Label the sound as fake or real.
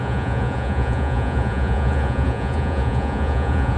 fake